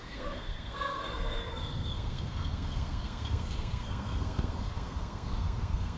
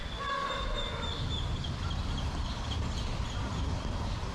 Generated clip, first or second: first